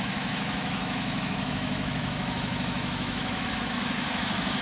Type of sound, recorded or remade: remade